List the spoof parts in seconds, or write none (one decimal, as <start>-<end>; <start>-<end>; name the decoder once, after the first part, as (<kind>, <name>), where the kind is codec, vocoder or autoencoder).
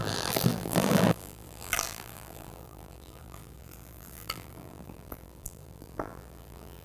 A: 0.0-6.8 (vocoder, BigVGAN v2)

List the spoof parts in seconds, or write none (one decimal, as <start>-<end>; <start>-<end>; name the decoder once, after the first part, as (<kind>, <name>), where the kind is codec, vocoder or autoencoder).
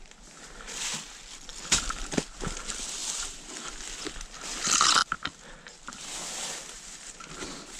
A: 3.0-3.8 (vocoder, BigVGAN v2)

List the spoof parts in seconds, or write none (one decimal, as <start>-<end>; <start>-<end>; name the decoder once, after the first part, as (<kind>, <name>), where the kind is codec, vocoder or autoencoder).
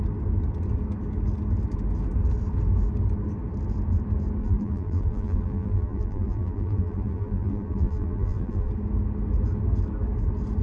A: 4.4-8.7 (vocoder, BigVGAN v2)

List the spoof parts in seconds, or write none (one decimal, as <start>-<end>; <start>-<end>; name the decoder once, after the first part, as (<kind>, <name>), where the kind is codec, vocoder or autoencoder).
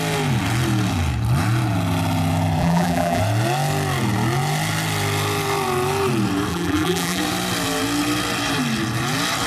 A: 2.6-3.2 (vocoder, BigVGAN v2); 6.5-7.2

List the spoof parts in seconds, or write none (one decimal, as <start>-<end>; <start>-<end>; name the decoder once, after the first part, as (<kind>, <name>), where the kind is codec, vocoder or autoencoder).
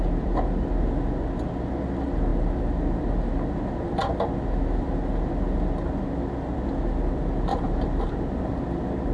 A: 7.5-8.1 (vocoder, BigVGAN v2)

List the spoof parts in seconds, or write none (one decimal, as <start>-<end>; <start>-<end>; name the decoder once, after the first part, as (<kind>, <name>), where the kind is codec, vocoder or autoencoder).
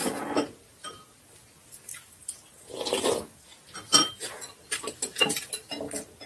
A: 0.0-1.2 (vocoder, BigVGAN v2)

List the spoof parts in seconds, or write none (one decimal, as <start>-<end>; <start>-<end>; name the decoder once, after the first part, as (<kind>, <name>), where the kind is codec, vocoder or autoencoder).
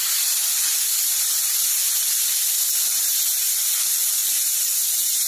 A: 0.0-0.5 (vocoder, BigVGAN v2); 3.7-4.2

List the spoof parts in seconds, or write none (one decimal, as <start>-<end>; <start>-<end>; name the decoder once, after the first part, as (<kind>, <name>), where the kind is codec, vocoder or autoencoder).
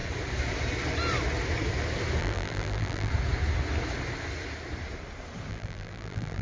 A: 2.2-3.1 (vocoder, BigVGAN v2); 5.5-6.4